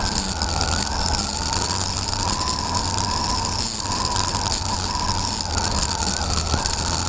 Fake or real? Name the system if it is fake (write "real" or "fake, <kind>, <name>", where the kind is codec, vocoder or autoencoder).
real